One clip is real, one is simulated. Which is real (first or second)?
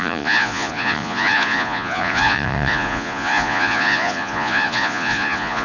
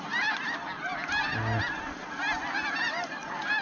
second